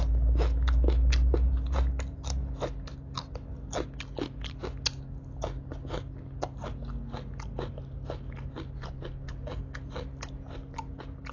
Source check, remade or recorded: recorded